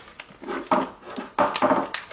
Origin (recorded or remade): recorded